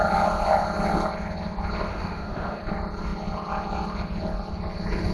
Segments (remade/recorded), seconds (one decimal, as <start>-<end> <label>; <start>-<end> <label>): 0.0-1.9 recorded; 1.9-2.6 remade; 2.6-5.1 recorded